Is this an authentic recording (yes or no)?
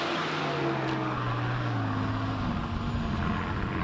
yes